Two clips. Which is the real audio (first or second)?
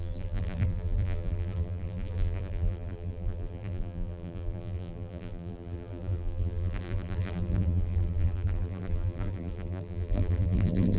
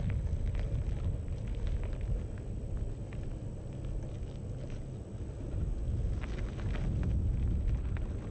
second